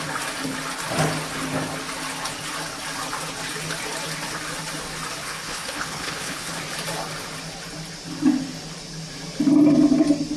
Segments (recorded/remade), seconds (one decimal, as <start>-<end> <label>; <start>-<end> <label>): 0.0-5.2 recorded; 5.2-6.5 remade; 6.5-10.4 recorded